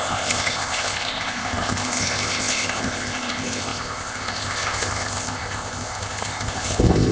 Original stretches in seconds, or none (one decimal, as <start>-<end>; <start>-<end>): none